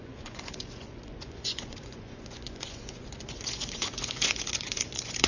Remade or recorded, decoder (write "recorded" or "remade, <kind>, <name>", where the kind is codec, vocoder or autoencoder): remade, vocoder, Vocos